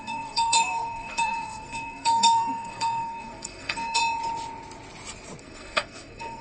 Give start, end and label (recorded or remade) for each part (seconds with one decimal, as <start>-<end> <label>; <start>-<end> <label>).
0.0-4.0 remade; 4.0-5.4 recorded; 5.4-6.4 remade